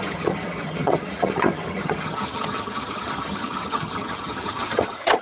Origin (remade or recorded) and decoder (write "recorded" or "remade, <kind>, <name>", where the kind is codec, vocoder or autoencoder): remade, vocoder, HiFi-GAN